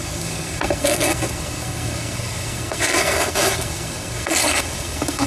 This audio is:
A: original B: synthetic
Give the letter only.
B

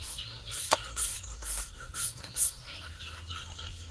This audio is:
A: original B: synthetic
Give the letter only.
B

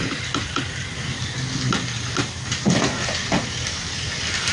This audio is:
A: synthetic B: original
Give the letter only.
B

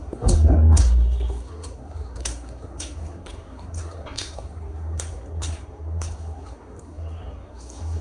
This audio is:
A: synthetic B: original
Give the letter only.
A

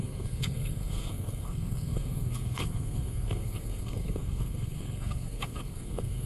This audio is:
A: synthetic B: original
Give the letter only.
A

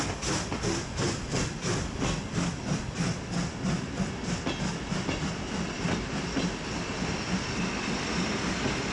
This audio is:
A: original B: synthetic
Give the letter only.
A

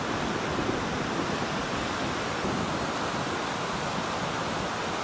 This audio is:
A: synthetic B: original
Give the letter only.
B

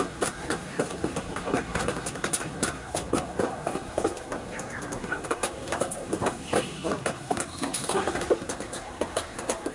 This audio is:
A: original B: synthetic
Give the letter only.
B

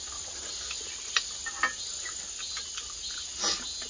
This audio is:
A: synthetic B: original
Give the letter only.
B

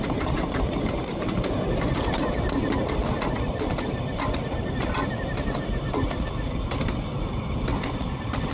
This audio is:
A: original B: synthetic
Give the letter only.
A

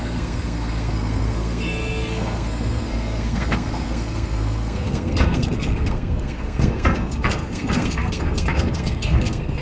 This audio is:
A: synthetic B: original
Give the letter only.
A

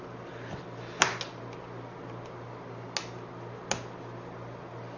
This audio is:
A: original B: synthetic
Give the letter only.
A